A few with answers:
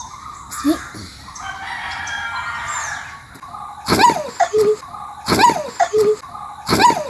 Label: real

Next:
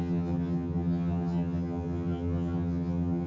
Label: fake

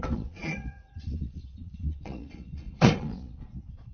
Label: fake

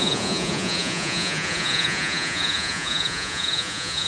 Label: fake